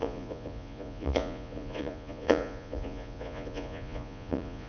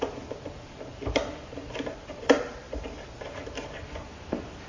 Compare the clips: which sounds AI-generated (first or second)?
first